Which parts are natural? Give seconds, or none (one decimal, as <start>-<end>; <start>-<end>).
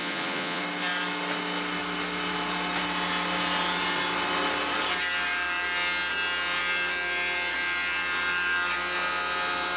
0.6-9.8